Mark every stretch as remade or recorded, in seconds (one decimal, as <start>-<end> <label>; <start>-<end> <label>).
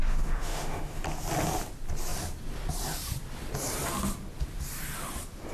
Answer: 0.0-1.0 remade; 1.0-5.5 recorded